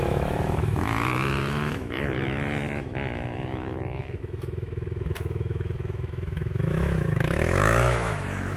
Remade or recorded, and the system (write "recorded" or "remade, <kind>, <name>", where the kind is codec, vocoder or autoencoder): remade, autoencoder, DAC-VAE